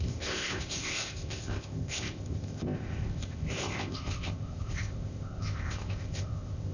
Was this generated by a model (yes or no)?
yes